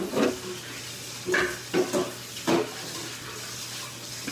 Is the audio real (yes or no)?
yes